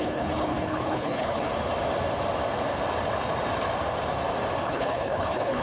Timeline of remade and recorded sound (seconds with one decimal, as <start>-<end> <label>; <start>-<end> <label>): 0.0-1.5 remade; 1.5-4.6 recorded; 4.6-5.6 remade